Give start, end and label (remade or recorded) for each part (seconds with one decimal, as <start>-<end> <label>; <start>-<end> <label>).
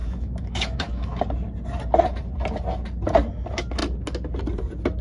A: 0.0-1.2 remade; 1.2-5.0 recorded